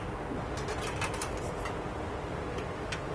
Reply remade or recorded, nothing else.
recorded